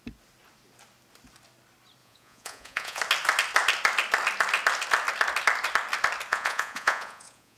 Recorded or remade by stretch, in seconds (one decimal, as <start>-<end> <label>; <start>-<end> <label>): 0.0-2.0 recorded; 2.0-3.0 remade; 3.0-6.3 recorded; 6.3-7.6 remade